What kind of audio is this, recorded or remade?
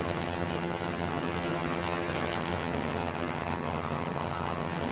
remade